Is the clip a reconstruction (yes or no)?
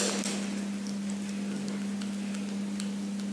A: no